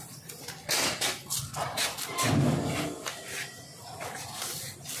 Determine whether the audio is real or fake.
real